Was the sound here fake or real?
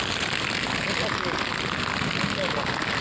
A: real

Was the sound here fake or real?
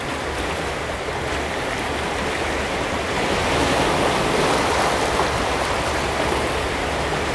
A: real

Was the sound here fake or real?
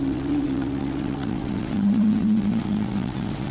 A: fake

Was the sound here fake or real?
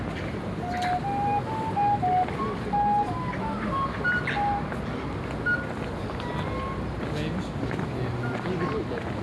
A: real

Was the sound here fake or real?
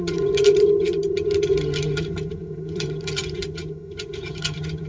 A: fake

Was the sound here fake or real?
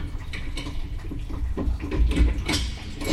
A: real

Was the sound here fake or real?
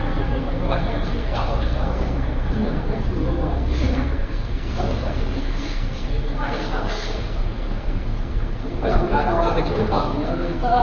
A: fake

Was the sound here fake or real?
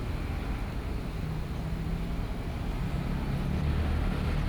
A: real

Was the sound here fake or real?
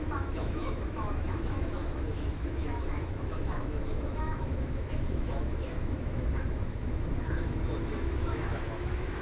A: fake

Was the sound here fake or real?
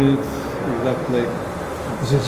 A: real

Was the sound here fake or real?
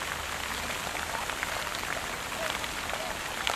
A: real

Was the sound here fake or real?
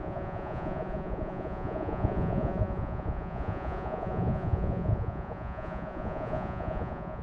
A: fake